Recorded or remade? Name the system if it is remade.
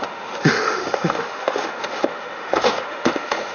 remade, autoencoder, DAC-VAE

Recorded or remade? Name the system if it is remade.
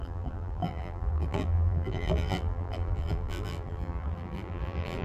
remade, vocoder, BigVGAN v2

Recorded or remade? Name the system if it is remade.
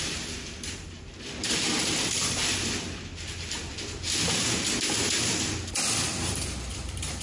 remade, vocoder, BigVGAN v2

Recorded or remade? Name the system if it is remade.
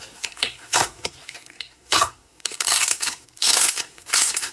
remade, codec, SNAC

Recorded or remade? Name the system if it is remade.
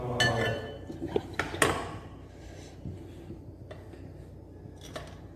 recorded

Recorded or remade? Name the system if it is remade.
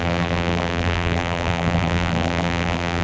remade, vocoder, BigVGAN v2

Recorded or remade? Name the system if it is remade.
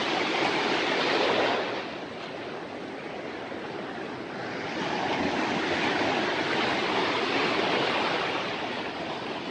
recorded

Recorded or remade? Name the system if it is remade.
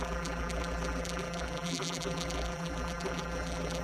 remade, vocoder, BigVGAN v2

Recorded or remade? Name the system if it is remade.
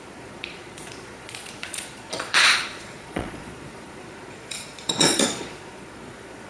remade, vocoder, Vocos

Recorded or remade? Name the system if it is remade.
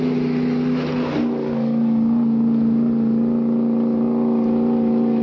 recorded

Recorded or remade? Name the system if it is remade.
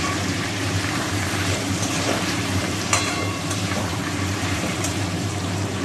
remade, vocoder, BigVGAN v2